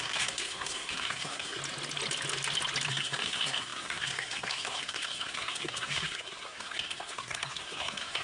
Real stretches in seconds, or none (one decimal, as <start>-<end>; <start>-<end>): 1.6-2.9